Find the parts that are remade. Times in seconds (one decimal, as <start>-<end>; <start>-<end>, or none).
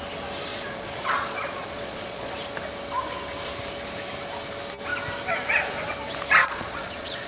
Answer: 0.5-2.3; 6.4-7.3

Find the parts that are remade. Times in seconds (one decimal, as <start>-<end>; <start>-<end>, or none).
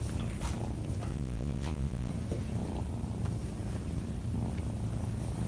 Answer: 1.1-2.1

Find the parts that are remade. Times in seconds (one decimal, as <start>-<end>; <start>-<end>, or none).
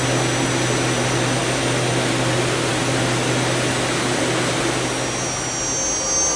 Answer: none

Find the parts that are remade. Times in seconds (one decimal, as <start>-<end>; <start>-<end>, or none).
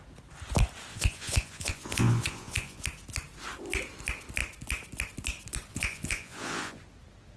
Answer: 0.9-2.8; 5.7-6.8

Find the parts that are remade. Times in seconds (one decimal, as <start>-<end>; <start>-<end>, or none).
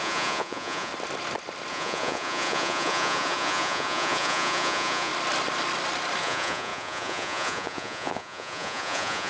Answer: 0.0-0.9; 1.7-5.1; 6.2-9.3